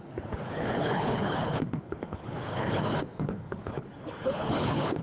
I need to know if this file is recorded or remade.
remade